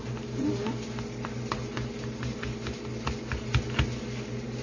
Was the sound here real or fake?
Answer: real